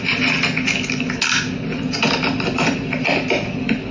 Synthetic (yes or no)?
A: no